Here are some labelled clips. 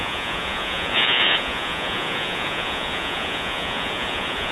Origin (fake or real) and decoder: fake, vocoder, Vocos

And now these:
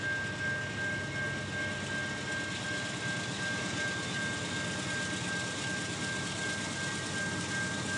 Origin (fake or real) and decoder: real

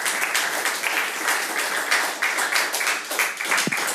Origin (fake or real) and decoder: real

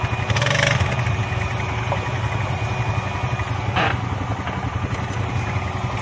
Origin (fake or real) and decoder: real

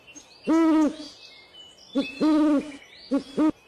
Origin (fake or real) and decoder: real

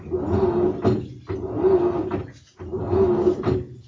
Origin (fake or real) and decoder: real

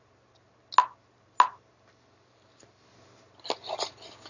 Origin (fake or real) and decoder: real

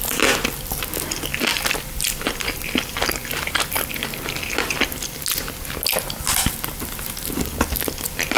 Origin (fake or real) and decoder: real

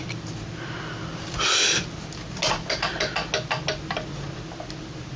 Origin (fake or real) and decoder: real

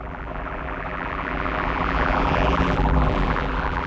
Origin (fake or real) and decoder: fake, vocoder, BigVGAN v2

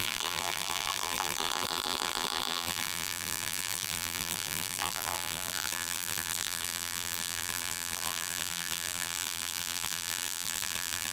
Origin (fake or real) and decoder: fake, vocoder, BigVGAN v2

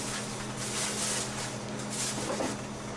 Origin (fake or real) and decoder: real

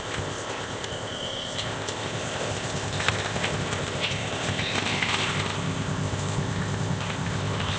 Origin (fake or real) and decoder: fake, codec, ZipCodec